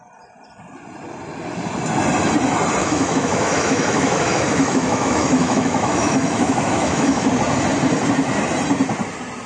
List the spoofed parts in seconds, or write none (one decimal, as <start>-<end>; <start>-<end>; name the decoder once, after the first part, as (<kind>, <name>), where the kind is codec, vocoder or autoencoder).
2.8-7.3 (autoencoder, DAC-VAE)